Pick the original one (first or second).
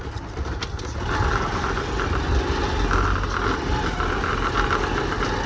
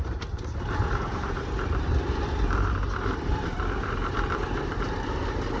first